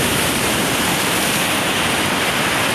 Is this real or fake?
real